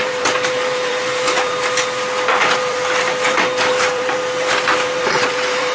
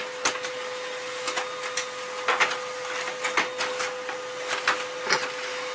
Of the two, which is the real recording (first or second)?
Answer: second